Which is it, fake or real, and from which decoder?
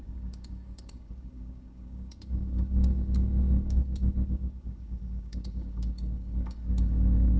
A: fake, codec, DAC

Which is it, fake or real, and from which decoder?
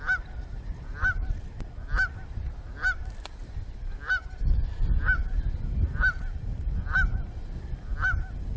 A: real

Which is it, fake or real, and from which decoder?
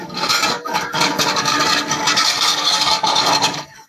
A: fake, codec, DAC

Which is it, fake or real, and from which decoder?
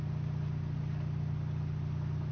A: real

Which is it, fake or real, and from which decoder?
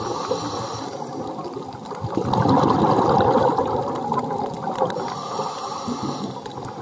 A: real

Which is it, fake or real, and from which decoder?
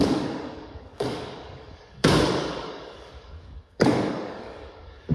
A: fake, codec, DAC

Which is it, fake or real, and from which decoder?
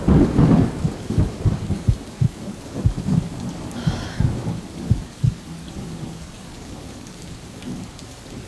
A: fake, codec, DAC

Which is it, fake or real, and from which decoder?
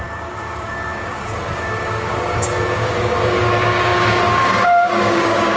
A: fake, codec, DAC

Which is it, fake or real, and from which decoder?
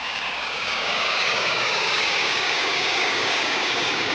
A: fake, codec, DAC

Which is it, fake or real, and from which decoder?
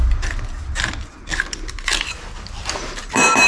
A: real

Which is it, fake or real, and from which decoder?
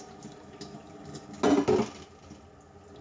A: real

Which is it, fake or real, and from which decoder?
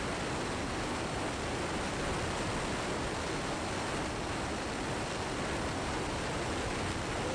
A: real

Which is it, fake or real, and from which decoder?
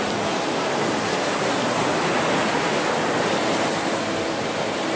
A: real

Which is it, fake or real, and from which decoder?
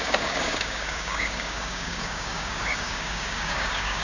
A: fake, codec, DAC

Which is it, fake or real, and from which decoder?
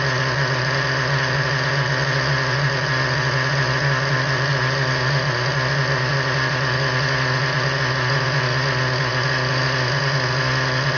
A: real